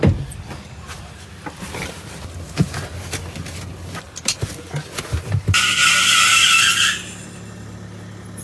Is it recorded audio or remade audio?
recorded